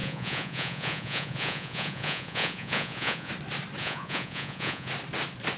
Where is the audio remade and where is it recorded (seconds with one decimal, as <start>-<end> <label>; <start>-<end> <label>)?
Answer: 0.0-3.3 remade; 3.3-3.8 recorded; 3.8-4.9 remade; 4.9-5.6 recorded